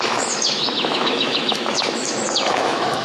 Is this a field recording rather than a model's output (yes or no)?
no